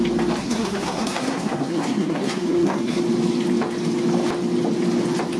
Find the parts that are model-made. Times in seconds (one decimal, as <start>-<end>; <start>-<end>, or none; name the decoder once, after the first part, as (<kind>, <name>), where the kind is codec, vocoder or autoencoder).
0.4-3.0 (codec, SNAC)